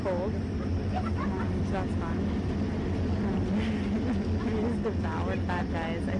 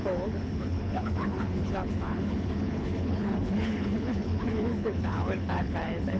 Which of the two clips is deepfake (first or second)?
second